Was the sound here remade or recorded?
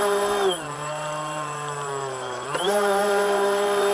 remade